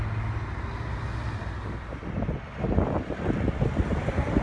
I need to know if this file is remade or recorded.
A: recorded